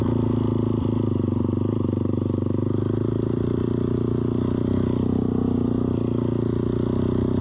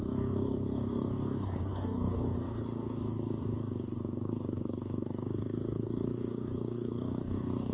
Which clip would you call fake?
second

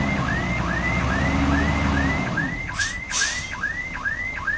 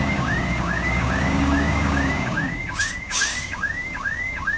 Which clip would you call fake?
second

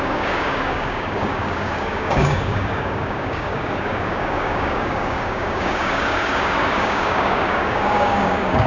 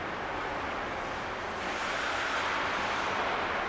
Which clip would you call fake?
first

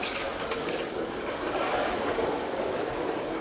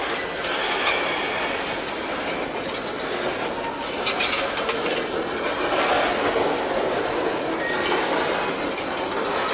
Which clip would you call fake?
first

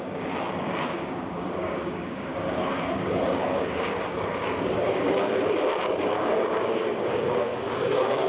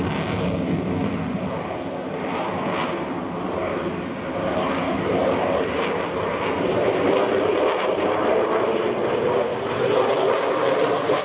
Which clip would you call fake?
first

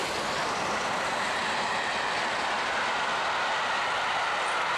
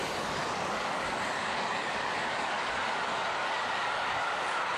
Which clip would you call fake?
second